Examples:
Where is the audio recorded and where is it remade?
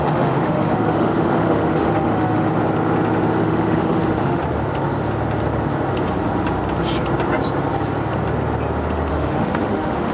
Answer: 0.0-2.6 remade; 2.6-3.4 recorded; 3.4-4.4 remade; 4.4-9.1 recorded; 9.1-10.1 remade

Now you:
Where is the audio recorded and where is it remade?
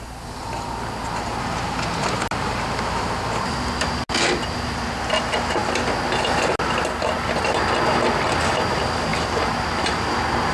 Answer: 0.0-10.5 recorded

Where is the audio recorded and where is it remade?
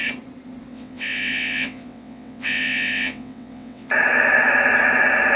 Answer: 0.0-0.7 recorded; 0.7-3.9 remade; 3.9-5.4 recorded